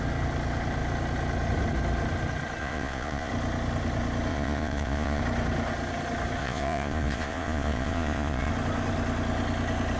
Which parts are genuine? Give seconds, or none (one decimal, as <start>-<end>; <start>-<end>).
0.0-2.6; 3.3-4.3; 5.2-6.4; 8.5-10.0